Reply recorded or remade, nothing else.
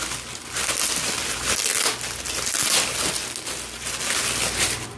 recorded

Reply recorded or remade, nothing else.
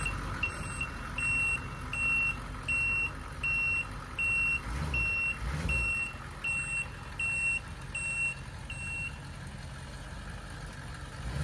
recorded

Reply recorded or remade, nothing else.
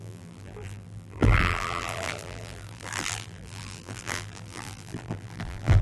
remade